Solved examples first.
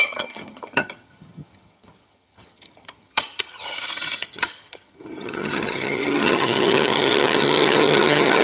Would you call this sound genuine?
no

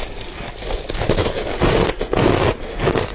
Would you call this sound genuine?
yes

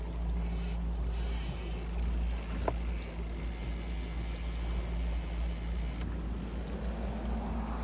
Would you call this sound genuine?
yes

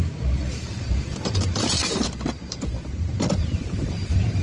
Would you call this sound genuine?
no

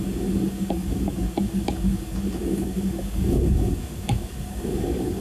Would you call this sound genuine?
no